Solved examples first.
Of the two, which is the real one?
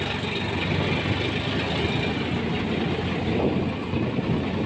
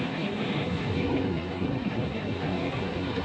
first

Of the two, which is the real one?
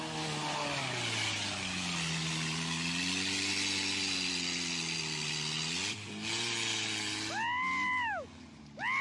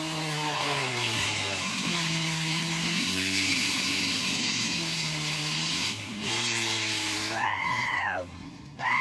first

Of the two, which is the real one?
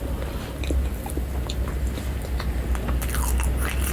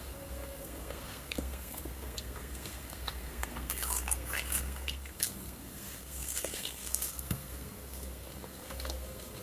first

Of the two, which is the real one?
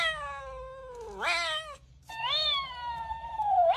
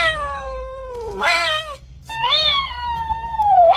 first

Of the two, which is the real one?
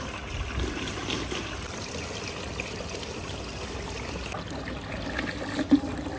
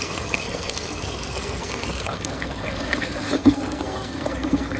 first